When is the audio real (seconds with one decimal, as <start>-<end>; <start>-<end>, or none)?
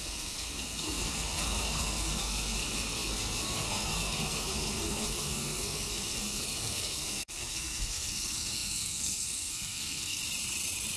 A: 10.2-11.0